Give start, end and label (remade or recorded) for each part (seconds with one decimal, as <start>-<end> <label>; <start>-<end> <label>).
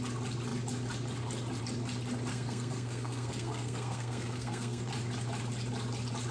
0.0-2.3 recorded; 2.3-4.9 remade; 4.9-6.3 recorded